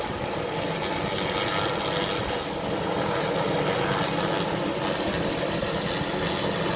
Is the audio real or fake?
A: real